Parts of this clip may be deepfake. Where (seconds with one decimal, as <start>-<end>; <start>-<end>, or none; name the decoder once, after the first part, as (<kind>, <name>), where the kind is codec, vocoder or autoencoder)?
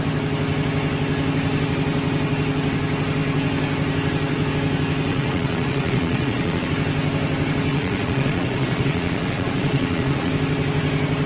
5.1-6.7 (vocoder, Vocos); 7.7-10.3